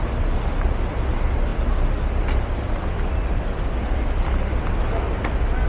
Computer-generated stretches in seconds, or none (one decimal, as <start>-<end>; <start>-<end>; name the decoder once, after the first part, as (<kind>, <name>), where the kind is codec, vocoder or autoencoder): none